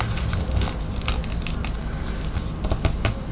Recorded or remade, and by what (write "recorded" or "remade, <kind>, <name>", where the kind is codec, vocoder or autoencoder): recorded